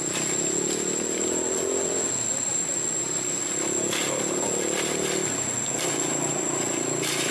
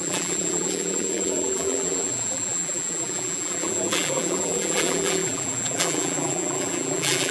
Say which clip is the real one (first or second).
first